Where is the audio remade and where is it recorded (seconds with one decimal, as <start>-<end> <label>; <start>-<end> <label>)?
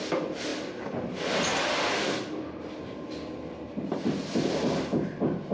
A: 0.0-5.5 recorded